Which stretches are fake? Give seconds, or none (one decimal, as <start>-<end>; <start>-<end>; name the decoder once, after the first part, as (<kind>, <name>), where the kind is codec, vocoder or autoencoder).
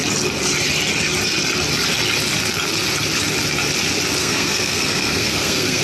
4.2-5.8 (codec, SNAC)